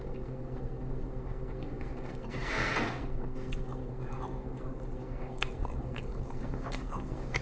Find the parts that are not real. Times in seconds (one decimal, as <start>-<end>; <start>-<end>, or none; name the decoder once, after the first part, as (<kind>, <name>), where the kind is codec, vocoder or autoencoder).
0.0-7.4 (codec, SNAC)